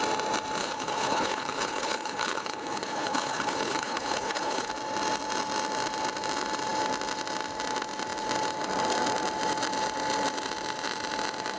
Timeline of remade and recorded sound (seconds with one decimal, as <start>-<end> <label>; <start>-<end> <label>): 0.0-0.6 recorded; 0.6-4.7 remade; 4.7-11.6 recorded